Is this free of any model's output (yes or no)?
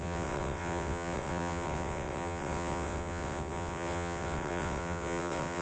no